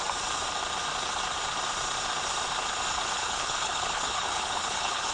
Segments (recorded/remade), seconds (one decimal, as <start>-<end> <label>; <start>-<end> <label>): 0.0-3.2 recorded; 3.2-5.1 remade